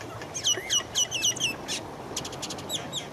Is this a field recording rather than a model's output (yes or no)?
yes